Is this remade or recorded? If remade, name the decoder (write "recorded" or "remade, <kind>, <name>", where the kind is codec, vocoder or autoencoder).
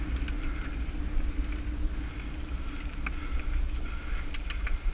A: recorded